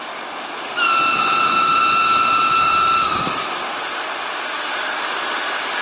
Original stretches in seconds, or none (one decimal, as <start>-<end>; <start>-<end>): 0.0-5.8